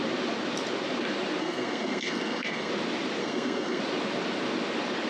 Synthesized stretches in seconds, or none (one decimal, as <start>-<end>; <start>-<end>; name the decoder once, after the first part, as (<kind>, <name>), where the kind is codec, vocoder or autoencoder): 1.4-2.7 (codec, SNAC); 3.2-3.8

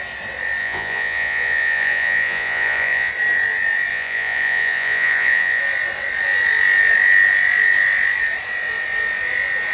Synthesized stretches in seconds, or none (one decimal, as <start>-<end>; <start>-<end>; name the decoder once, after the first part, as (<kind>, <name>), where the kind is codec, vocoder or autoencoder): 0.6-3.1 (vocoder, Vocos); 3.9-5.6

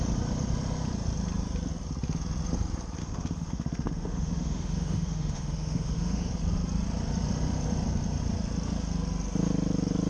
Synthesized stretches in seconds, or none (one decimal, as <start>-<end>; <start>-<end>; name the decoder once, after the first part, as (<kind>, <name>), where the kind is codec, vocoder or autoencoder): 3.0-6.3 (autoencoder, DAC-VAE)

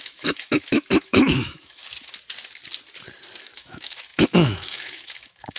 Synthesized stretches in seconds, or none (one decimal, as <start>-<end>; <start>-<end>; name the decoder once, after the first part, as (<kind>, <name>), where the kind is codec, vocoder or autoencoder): 0.0-1.8 (autoencoder, DAC-VAE); 3.4-5.6

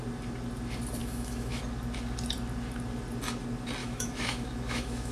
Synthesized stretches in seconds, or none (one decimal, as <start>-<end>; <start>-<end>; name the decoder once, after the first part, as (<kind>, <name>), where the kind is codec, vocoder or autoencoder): 1.0-1.6 (autoencoder, DAC-VAE); 3.8-5.1